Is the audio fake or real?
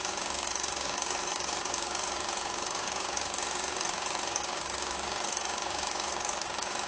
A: fake